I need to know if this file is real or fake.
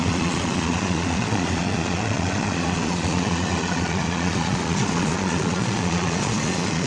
fake